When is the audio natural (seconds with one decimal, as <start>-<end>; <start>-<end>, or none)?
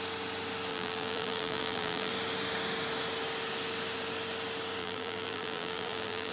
0.0-0.7; 2.1-4.8